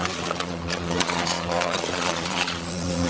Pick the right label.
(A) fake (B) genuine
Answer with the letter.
A